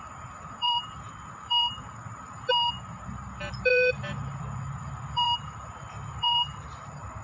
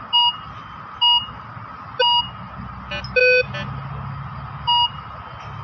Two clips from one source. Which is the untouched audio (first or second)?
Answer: second